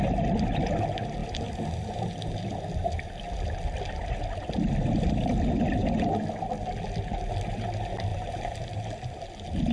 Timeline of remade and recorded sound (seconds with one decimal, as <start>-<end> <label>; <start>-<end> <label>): 0.0-9.7 recorded